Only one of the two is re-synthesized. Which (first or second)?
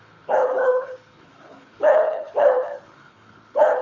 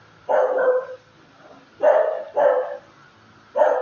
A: first